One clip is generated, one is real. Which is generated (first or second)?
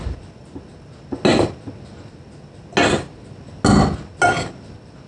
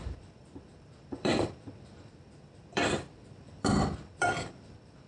second